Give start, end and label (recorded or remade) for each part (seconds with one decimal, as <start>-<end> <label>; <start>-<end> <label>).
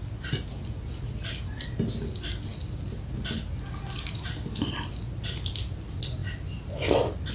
0.0-7.3 recorded